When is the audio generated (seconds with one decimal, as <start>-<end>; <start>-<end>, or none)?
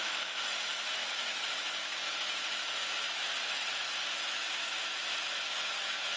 0.0-6.2